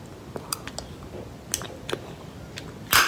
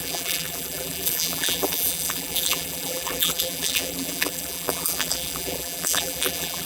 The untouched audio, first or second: first